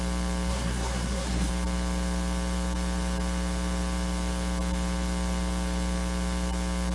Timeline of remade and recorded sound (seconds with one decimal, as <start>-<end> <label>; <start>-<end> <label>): 0.0-0.5 recorded; 0.5-1.5 remade; 1.5-6.9 recorded